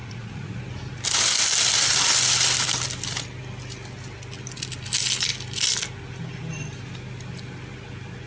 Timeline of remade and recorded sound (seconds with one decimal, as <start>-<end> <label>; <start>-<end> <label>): 0.0-0.6 remade; 0.6-8.3 recorded